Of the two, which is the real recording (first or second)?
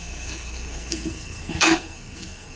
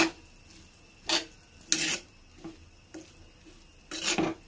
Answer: second